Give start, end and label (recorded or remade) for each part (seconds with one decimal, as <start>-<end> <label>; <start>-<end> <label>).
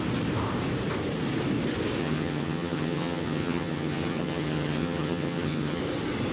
0.0-2.0 recorded; 2.0-5.8 remade; 5.8-6.3 recorded